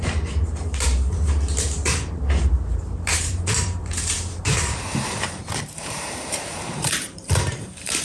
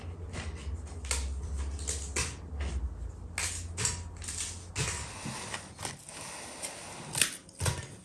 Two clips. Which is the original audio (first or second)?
second